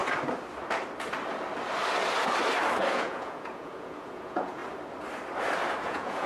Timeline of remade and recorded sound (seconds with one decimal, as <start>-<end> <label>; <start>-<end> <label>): 0.0-2.9 recorded; 2.9-4.6 remade; 4.6-5.8 recorded; 5.8-6.3 remade